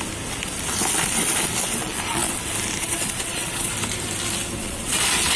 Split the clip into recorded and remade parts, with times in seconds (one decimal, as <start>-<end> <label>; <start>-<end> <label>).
0.0-1.8 recorded; 1.8-2.3 remade; 2.3-2.8 recorded; 2.8-3.7 remade; 3.7-4.6 recorded; 4.6-5.4 remade

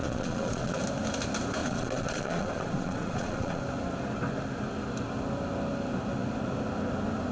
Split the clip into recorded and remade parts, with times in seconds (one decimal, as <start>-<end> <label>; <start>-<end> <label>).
0.0-0.8 remade; 0.8-1.6 recorded; 1.6-3.6 remade; 3.6-7.3 recorded

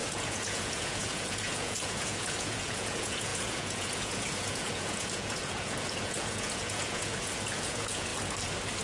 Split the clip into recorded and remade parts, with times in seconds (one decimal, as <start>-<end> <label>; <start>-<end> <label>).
0.0-8.1 remade; 8.1-8.8 recorded

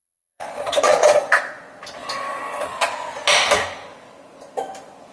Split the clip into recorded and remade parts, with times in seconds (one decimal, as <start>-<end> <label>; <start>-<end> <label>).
0.0-1.5 remade; 1.5-2.0 recorded; 2.0-3.0 remade; 3.0-5.1 recorded

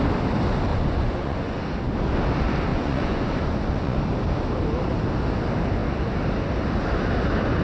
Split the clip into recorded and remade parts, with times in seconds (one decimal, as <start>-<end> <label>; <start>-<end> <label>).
0.0-0.7 recorded; 0.7-1.6 remade; 1.6-2.7 recorded; 2.7-4.0 remade; 4.0-7.6 recorded